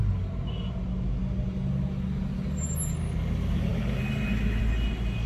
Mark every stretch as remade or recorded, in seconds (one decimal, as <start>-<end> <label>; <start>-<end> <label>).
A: 0.0-5.3 recorded